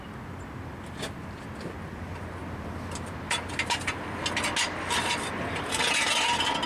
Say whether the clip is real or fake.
real